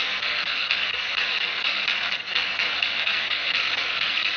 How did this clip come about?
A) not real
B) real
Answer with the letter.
A